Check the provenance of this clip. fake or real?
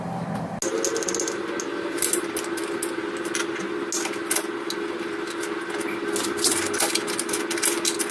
real